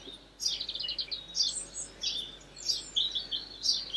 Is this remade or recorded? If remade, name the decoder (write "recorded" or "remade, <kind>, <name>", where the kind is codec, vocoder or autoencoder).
recorded